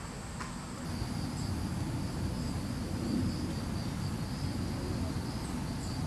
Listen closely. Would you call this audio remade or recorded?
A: recorded